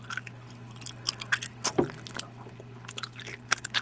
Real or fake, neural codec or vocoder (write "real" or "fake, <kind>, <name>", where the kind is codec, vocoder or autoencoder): real